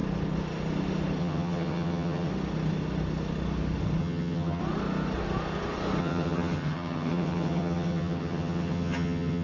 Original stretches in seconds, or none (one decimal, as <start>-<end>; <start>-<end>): 0.0-1.2; 2.3-4.0; 4.6-6.0